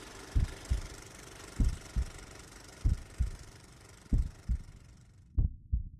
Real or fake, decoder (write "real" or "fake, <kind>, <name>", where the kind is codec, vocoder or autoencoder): real